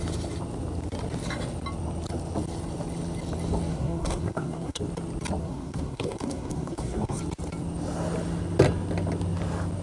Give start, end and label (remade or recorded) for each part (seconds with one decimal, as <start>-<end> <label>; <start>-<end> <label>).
0.0-3.7 recorded; 3.7-4.8 remade; 4.8-5.4 recorded; 5.4-7.2 remade; 7.2-9.8 recorded